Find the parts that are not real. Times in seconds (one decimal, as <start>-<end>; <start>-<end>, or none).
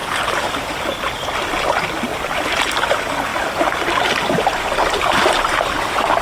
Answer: 0.0-0.8; 2.1-2.6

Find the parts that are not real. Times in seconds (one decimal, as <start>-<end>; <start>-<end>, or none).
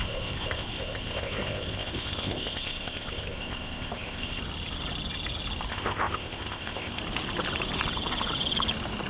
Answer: 0.0-4.4; 5.7-7.0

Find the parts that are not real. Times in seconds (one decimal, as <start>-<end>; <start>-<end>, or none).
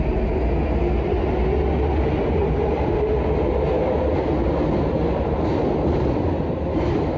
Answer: 2.4-3.1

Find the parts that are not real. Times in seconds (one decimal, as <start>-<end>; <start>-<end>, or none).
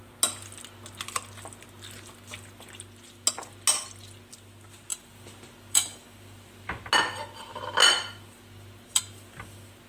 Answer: 4.9-6.7; 7.5-9.0